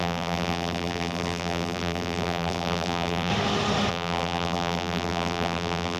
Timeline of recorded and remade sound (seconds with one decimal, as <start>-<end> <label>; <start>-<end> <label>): 0.0-3.3 remade; 3.3-3.9 recorded; 3.9-6.0 remade